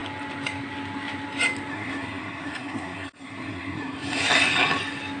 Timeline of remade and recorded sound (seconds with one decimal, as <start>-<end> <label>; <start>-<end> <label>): 0.0-1.7 recorded; 1.7-4.3 remade; 4.3-5.2 recorded